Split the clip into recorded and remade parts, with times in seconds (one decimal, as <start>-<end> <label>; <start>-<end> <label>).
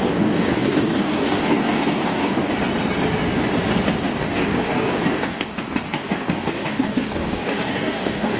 0.0-2.5 remade; 2.5-4.0 recorded; 4.0-8.4 remade